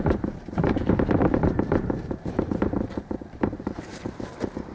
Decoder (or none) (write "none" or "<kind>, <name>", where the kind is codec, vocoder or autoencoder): vocoder, BigVGAN v2